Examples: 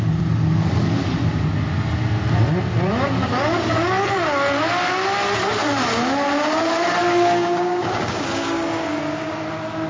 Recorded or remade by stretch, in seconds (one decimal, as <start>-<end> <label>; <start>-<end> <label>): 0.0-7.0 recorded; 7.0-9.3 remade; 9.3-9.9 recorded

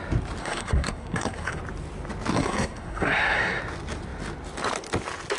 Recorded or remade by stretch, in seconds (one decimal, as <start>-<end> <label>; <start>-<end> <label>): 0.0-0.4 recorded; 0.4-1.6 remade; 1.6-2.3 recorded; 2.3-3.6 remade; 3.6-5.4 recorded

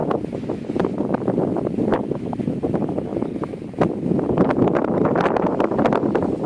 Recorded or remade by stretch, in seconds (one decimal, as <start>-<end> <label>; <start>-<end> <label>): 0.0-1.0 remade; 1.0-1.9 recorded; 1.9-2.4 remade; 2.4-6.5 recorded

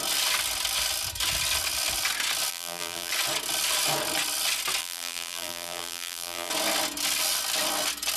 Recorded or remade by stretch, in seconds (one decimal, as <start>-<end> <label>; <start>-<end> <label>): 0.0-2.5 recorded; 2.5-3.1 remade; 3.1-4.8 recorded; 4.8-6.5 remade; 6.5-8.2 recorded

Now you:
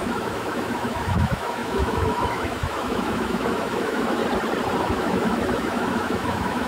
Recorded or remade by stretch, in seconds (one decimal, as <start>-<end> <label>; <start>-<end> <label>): 0.0-4.2 remade; 4.2-4.8 recorded; 4.8-6.7 remade